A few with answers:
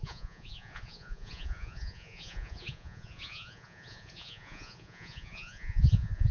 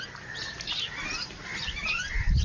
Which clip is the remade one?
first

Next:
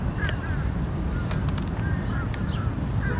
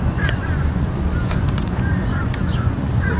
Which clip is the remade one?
second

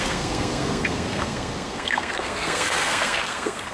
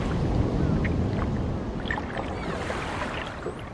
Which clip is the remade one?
first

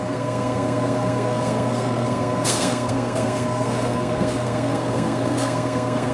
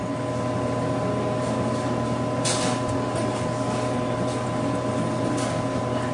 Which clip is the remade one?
first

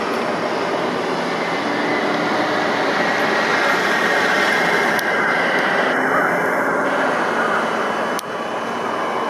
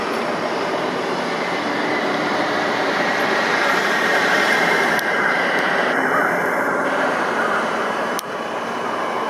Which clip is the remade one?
second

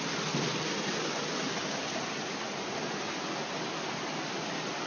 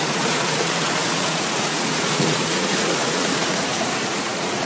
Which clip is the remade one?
second